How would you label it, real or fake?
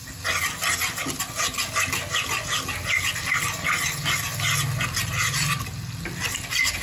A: real